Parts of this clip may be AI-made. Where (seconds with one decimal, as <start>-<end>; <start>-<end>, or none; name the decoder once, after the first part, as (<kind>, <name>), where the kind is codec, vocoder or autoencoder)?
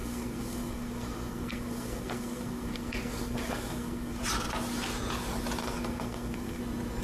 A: 0.0-4.2 (codec, SNAC); 5.6-6.6